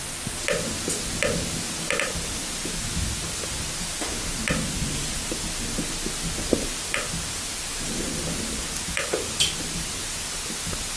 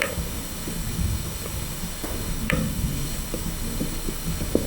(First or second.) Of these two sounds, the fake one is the second